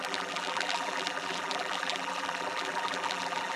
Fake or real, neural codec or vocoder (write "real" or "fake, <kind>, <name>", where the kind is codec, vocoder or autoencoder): fake, vocoder, BigVGAN v2